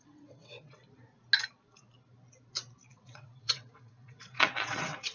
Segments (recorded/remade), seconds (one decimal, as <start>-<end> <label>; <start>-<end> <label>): 0.0-0.8 remade; 0.8-2.9 recorded; 2.9-5.1 remade